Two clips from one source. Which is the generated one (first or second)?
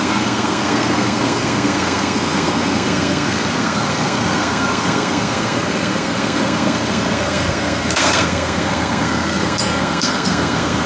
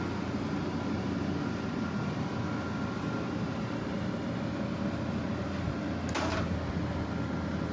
first